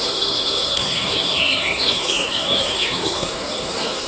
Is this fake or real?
fake